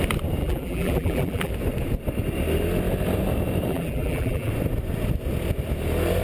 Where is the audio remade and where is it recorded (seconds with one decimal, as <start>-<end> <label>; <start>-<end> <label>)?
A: 0.0-0.4 recorded; 0.4-1.5 remade; 1.5-3.7 recorded; 3.7-4.5 remade; 4.5-6.2 recorded